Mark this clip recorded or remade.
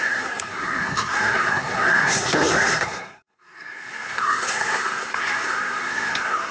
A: remade